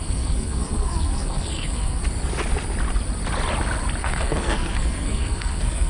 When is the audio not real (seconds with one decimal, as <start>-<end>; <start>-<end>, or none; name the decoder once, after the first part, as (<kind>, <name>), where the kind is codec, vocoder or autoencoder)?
0.0-2.0 (codec, SNAC); 4.0-5.9